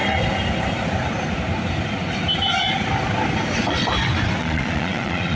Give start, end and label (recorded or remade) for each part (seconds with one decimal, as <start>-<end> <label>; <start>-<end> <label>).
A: 0.0-4.4 recorded; 4.4-5.4 remade